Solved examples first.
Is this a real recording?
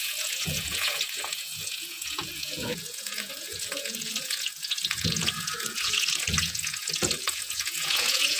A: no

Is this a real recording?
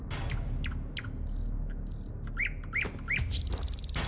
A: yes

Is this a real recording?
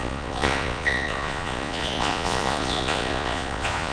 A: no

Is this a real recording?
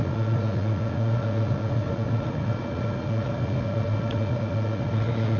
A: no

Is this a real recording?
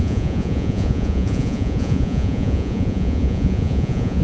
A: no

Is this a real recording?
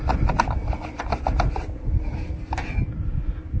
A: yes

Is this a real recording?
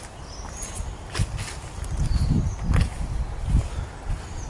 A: yes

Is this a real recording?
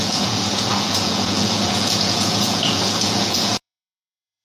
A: no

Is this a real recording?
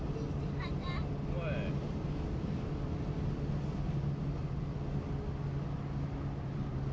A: yes